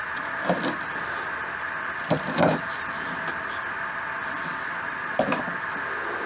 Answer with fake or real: real